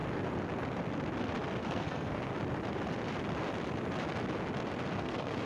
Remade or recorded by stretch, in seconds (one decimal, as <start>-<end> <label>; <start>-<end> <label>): 0.0-1.6 recorded; 1.6-2.3 remade; 2.3-5.0 recorded; 5.0-5.5 remade